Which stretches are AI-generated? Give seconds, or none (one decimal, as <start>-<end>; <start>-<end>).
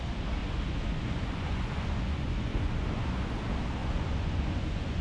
0.4-3.4; 3.8-5.0